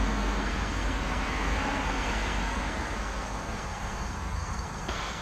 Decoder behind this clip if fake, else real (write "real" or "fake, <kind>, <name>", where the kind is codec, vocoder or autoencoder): fake, codec, SNAC